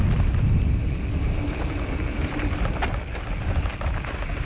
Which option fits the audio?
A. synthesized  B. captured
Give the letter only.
B